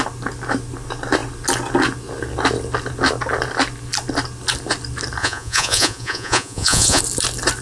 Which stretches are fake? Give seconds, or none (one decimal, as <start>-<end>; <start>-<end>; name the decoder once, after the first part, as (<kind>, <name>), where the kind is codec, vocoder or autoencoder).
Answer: 5.2-7.0 (vocoder, Vocos)